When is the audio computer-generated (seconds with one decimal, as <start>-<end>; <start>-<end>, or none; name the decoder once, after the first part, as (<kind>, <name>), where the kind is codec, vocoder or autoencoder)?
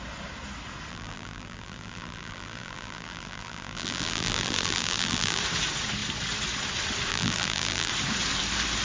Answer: 0.9-5.4 (vocoder, BigVGAN v2); 7.1-7.9